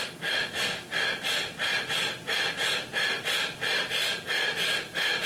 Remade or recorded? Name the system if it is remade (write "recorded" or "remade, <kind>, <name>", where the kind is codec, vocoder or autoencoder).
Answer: recorded